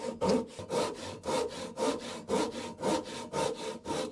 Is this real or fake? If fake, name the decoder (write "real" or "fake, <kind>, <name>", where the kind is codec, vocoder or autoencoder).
real